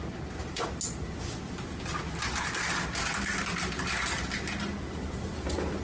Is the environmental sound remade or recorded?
recorded